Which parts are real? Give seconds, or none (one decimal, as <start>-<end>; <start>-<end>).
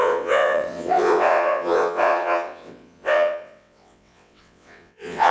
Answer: none